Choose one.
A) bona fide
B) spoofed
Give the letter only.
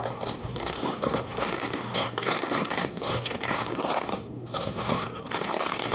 B